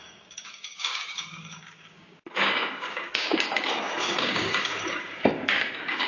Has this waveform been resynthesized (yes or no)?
yes